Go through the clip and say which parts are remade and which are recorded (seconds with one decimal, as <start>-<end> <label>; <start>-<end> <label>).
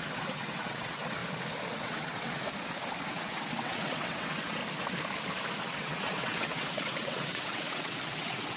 0.0-1.2 remade; 1.2-1.8 recorded; 1.8-2.4 remade; 2.4-3.1 recorded; 3.1-4.6 remade; 4.6-5.6 recorded; 5.6-8.6 remade